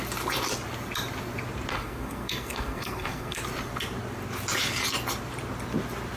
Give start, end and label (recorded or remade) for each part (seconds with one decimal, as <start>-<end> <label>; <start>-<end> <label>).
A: 0.0-1.7 recorded; 1.7-3.4 remade; 3.4-6.2 recorded